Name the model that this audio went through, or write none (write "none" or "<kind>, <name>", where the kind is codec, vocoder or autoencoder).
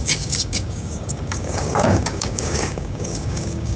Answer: codec, DAC